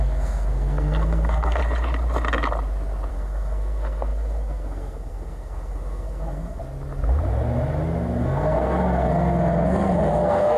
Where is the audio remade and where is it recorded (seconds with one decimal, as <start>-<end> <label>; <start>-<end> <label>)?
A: 0.0-1.6 remade; 1.6-3.1 recorded; 3.1-6.6 remade; 6.6-8.2 recorded; 8.2-10.6 remade